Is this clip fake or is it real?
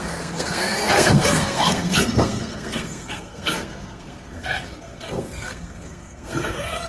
fake